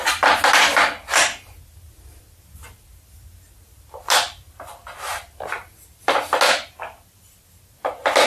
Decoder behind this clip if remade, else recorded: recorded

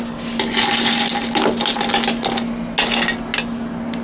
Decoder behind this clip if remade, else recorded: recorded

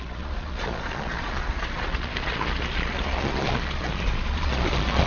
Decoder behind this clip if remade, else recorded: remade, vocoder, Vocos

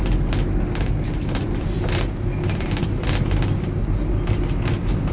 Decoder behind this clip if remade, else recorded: recorded